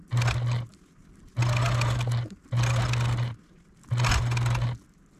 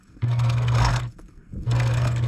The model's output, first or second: second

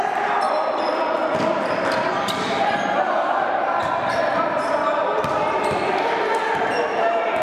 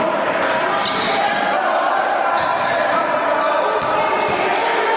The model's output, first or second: first